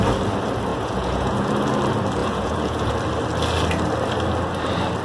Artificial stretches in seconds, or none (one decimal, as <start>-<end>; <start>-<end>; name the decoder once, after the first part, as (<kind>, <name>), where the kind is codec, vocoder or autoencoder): 0.7-1.5 (vocoder, Vocos); 2.2-2.9